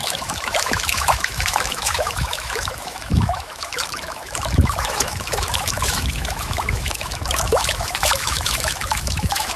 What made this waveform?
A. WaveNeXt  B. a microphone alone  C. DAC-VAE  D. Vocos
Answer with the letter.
C